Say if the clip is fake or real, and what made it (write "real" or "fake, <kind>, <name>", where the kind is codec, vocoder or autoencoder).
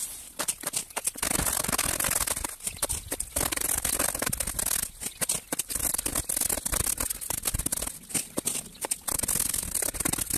real